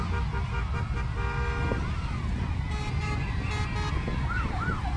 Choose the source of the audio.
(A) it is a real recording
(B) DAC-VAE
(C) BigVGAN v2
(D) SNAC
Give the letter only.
A